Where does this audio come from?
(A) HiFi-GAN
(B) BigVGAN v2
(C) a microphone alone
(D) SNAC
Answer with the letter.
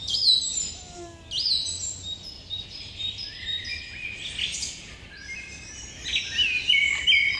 C